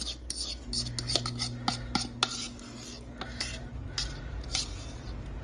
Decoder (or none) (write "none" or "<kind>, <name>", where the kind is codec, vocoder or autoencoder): none